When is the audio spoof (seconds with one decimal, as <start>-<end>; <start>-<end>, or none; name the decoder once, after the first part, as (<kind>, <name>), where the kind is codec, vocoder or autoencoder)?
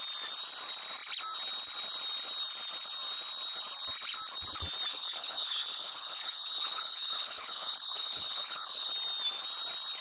4.9-8.9 (codec, HILCodec)